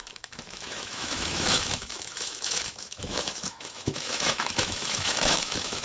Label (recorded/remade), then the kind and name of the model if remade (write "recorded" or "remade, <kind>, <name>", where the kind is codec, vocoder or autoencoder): remade, autoencoder, DAC-VAE